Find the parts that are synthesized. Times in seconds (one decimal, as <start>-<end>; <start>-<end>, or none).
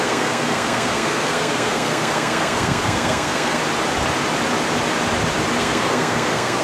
0.0-3.6; 5.6-6.6